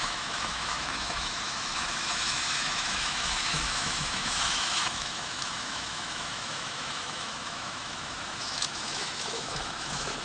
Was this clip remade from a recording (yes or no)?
yes